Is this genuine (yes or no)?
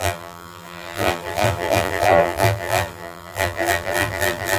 no